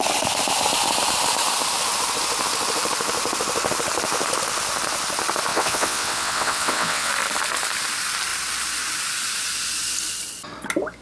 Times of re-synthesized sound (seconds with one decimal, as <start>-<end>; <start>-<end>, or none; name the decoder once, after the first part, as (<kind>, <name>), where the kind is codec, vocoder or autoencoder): 5.5-7.1 (vocoder, WaveNeXt)